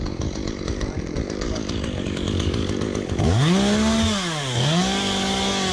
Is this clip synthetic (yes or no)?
yes